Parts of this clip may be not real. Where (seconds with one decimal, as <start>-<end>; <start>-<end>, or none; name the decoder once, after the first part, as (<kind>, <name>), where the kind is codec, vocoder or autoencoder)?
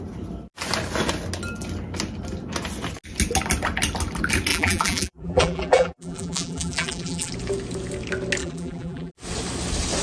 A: 4.5-7.3 (vocoder, BigVGAN v2); 8.4-9.1